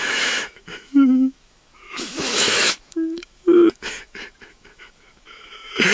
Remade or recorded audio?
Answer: remade